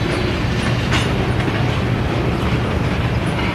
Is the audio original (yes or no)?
yes